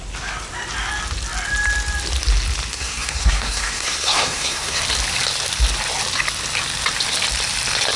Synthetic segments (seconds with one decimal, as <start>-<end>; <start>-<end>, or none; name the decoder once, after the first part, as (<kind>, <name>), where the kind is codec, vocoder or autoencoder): 2.7-4.8 (codec, SNAC)